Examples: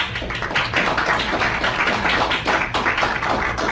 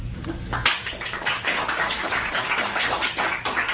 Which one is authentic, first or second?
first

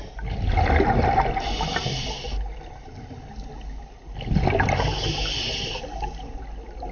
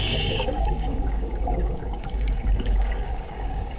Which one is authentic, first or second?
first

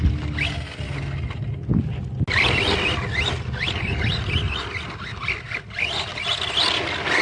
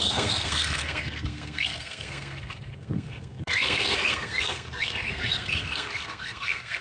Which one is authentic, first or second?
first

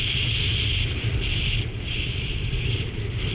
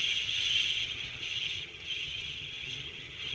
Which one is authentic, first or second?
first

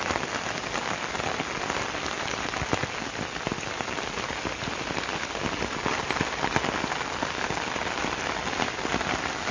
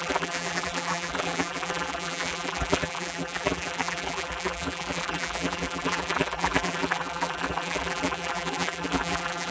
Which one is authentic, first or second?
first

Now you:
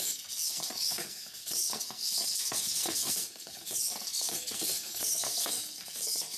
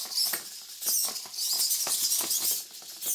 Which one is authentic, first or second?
second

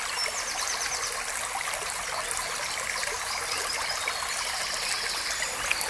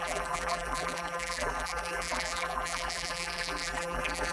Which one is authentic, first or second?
first